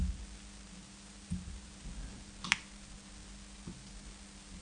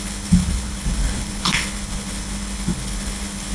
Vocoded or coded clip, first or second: second